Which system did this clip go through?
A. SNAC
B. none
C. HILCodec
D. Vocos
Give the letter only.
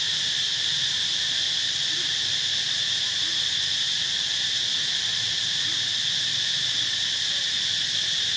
B